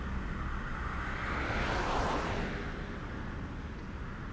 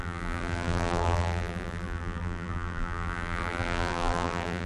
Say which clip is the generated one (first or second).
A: second